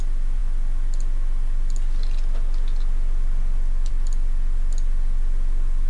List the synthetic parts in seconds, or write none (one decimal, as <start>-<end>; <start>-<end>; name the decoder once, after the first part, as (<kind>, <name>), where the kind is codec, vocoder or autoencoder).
none

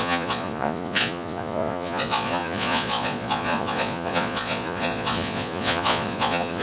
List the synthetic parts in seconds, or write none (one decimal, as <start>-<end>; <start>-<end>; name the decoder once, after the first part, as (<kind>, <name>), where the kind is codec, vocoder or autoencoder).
0.0-6.6 (vocoder, Vocos)

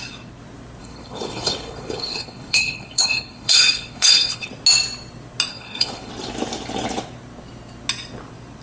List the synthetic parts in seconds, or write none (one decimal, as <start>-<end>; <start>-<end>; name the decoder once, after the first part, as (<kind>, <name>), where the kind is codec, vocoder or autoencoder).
0.8-4.5 (codec, HILCodec); 5.5-6.1

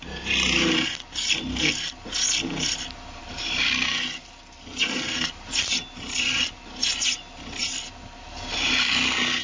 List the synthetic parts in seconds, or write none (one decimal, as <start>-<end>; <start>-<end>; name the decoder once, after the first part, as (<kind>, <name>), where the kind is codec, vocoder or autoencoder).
none

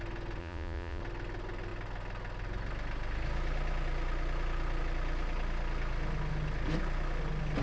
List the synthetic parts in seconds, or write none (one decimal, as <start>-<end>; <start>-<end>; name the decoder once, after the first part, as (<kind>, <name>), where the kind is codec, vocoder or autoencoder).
0.4-1.0 (vocoder, Vocos)

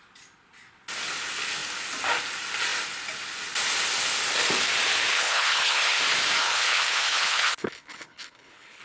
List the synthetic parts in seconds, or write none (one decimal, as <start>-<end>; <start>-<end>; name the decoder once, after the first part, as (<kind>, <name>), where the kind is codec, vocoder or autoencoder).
5.1-6.0 (codec, HILCodec); 6.4-8.8

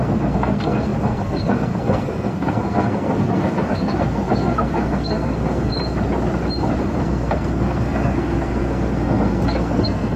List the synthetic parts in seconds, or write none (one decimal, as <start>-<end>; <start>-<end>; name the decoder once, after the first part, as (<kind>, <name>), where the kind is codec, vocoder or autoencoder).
0.0-5.7 (codec, SNAC); 6.8-10.2

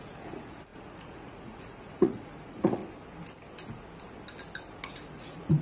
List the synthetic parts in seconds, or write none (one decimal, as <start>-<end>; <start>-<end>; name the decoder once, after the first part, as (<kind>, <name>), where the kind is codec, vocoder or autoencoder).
0.0-2.8 (vocoder, Vocos); 4.9-5.6